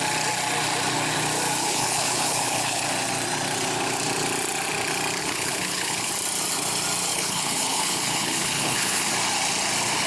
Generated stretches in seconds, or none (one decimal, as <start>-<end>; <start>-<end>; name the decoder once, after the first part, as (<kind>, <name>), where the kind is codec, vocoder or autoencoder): 1.6-2.8 (codec, HILCodec); 5.2-6.1; 7.1-9.1